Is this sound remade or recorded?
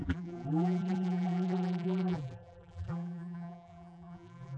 remade